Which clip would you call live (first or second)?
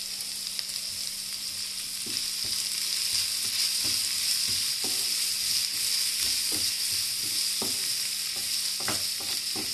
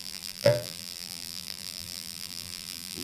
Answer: first